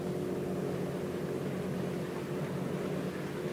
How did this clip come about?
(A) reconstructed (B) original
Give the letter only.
B